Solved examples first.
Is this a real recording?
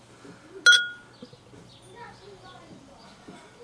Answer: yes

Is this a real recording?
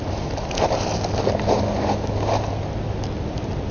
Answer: yes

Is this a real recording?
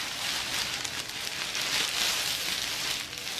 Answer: yes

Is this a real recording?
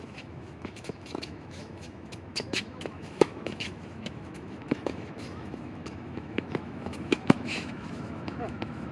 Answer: no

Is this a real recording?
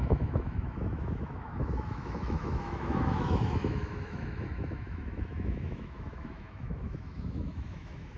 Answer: no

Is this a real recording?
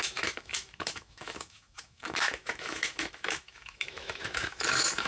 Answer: no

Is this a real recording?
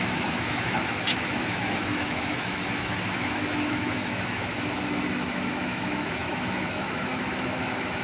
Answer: no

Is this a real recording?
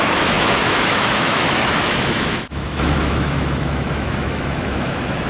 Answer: no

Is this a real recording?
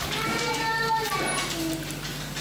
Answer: yes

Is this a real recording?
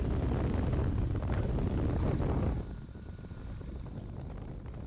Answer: yes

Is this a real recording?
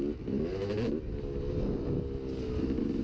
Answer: yes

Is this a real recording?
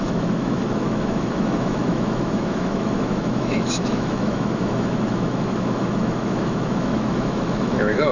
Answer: no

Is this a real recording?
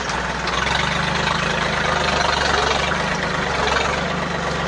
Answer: yes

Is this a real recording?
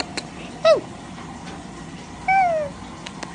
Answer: yes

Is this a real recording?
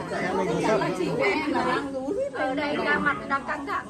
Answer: yes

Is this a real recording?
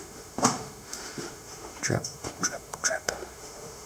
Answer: no